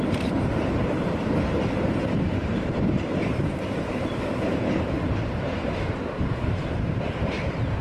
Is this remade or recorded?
remade